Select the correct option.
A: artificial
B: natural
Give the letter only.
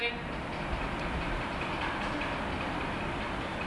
B